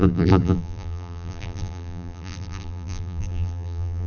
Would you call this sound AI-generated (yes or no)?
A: yes